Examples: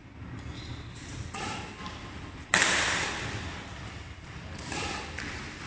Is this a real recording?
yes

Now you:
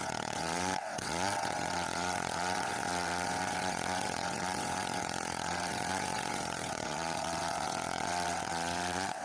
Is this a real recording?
no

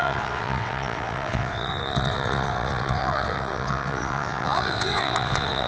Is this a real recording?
no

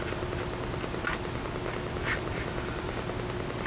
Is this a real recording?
yes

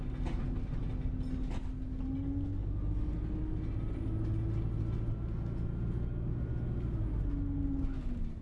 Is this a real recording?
yes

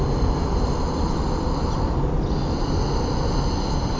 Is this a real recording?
yes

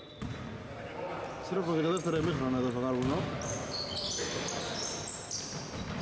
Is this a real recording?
yes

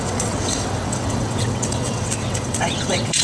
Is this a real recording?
no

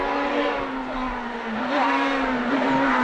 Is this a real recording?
yes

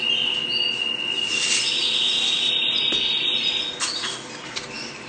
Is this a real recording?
yes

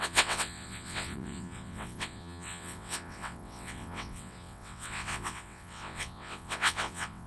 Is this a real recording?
no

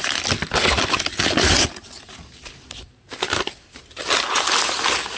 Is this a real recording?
yes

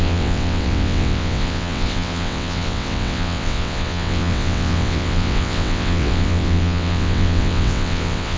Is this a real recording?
no